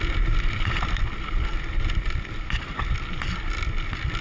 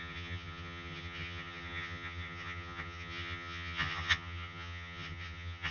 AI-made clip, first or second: second